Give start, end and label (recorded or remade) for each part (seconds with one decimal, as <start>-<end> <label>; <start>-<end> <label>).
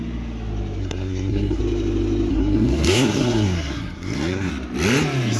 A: 0.0-0.8 recorded; 0.8-1.6 remade; 1.6-2.3 recorded; 2.3-4.5 remade; 4.5-5.4 recorded